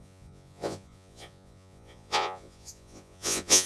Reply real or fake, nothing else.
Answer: fake